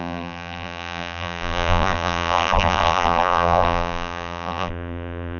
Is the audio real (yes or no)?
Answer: no